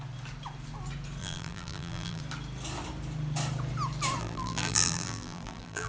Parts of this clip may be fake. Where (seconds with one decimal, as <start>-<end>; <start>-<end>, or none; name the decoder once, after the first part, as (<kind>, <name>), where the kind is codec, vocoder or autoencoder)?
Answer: 1.2-2.2 (vocoder, BigVGAN v2); 4.2-5.9